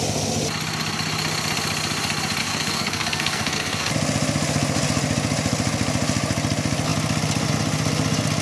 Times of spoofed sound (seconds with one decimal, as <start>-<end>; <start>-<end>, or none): 2.4-3.9